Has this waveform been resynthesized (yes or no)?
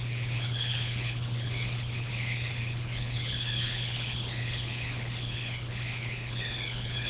yes